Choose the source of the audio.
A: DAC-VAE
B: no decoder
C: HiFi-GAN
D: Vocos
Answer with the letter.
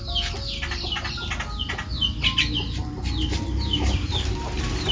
B